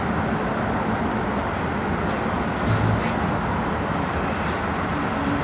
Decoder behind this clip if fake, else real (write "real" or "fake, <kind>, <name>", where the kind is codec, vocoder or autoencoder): real